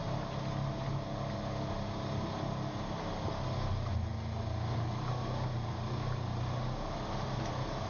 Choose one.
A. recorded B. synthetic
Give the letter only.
A